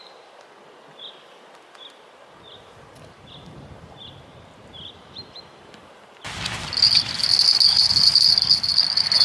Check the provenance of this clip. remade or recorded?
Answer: recorded